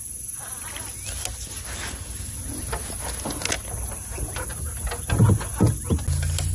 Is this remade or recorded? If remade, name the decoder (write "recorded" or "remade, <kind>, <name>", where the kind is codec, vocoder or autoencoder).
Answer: recorded